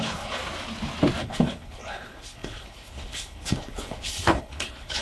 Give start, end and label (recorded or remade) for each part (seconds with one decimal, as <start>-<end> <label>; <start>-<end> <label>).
0.0-0.4 remade; 0.4-1.2 recorded; 1.2-5.0 remade